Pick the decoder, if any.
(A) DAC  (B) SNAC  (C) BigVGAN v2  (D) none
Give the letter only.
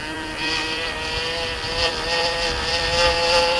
C